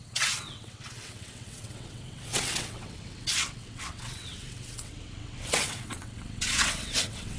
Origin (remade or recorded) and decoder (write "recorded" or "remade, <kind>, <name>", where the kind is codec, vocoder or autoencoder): remade, vocoder, WaveNeXt